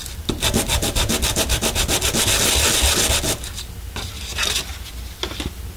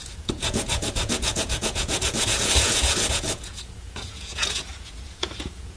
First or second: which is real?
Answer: first